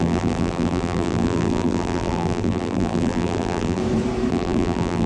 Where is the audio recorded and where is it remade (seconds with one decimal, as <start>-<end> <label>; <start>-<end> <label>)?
0.0-3.8 remade; 3.8-4.3 recorded; 4.3-5.1 remade